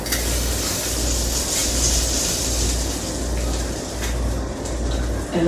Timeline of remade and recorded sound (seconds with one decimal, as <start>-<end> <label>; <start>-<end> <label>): 0.0-5.5 recorded